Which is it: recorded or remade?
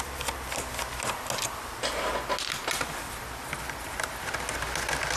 recorded